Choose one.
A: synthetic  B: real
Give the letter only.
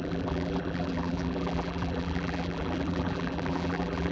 A